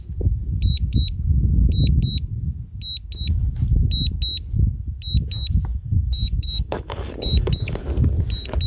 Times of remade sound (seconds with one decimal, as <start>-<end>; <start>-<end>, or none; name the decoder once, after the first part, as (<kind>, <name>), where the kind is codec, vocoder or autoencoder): 5.7-7.8 (codec, DAC)